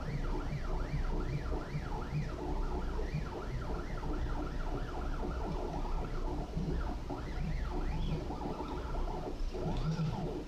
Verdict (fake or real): real